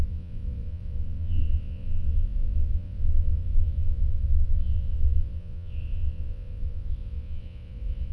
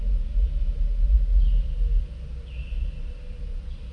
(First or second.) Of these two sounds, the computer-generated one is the first